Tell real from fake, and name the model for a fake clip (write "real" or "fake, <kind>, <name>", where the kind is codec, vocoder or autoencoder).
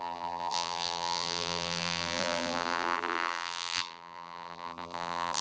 fake, vocoder, BigVGAN v2